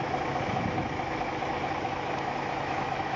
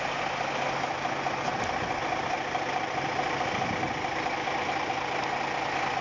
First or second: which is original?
second